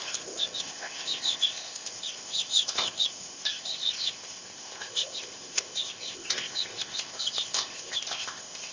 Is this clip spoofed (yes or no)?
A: yes